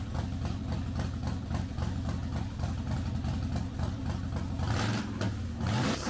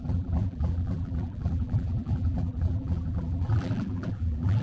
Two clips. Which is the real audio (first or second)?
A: first